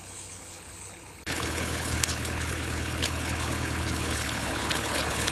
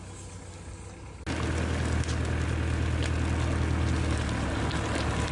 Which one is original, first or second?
second